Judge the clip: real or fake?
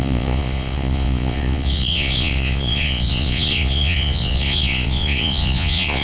fake